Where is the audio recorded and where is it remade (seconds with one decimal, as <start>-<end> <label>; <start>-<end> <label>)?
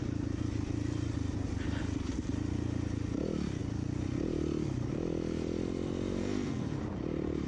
0.0-6.2 recorded; 6.2-6.8 remade; 6.8-7.5 recorded